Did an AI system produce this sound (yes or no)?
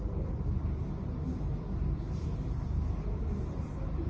no